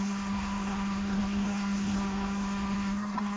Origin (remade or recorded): remade